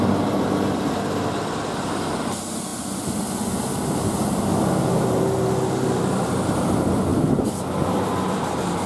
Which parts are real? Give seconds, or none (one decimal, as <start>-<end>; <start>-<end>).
none